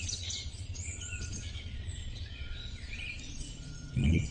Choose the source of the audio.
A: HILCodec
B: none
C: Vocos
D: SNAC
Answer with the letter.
C